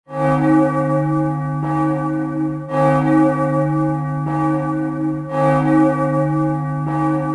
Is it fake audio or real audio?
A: real